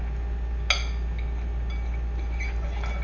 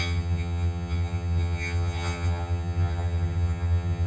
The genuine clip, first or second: first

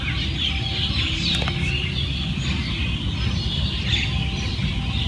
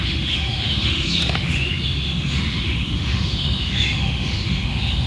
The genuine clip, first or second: first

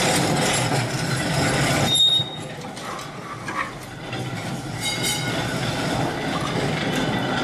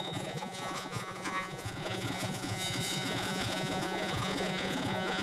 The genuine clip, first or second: first